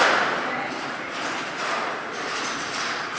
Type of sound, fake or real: real